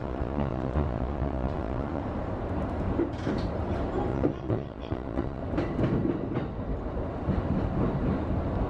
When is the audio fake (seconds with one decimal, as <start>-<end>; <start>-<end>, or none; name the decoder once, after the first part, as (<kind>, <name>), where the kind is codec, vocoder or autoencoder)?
0.0-2.0 (vocoder, Vocos); 4.1-5.4